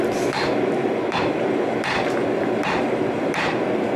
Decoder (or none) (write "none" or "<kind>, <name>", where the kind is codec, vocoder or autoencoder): vocoder, BigVGAN v2